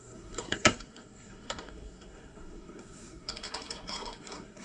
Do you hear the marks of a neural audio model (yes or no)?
yes